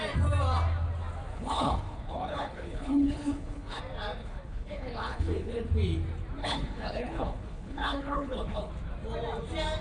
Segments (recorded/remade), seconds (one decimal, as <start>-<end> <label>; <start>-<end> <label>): 0.0-1.3 recorded; 1.3-3.8 remade; 3.8-4.2 recorded; 4.2-5.6 remade; 5.6-6.4 recorded; 6.4-8.7 remade; 8.7-9.8 recorded